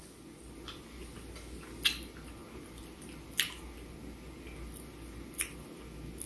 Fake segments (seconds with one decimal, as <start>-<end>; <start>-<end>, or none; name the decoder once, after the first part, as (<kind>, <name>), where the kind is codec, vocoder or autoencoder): none